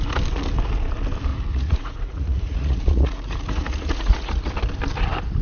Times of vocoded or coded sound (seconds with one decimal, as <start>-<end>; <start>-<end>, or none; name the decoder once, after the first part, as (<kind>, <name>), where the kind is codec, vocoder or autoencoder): 1.3-4.5 (vocoder, Vocos)